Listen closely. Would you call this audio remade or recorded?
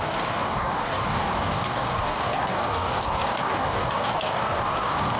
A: remade